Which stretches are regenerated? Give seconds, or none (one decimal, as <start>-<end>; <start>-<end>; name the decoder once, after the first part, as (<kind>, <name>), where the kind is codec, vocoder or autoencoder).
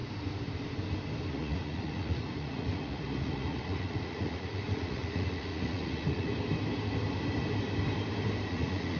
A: 1.3-6.3 (vocoder, Vocos); 8.5-9.0